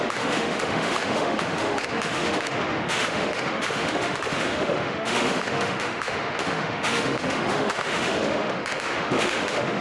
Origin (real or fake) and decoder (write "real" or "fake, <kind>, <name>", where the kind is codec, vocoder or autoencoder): fake, autoencoder, DAC-VAE